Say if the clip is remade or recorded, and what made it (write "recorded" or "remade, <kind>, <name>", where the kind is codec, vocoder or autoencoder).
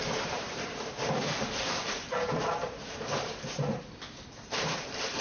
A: remade, vocoder, BigVGAN v2